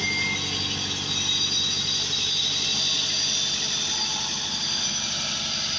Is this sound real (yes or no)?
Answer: yes